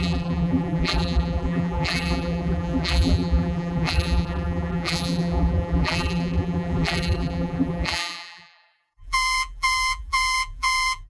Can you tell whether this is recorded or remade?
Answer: remade